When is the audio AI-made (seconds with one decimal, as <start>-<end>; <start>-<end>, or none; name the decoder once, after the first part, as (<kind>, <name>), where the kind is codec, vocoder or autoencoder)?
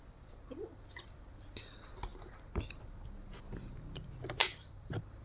0.7-1.3 (vocoder, BigVGAN v2); 4.4-5.2